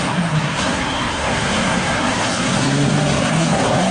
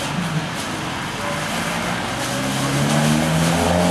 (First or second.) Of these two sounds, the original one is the second